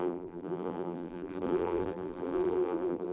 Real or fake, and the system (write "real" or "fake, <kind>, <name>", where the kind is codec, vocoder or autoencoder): fake, vocoder, BigVGAN v2